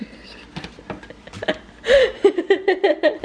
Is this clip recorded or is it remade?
recorded